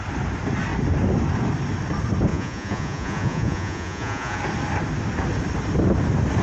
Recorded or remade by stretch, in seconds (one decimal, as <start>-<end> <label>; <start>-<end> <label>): 0.0-2.3 recorded; 2.3-4.4 remade; 4.4-6.4 recorded